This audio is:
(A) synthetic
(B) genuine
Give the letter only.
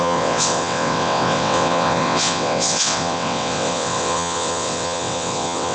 A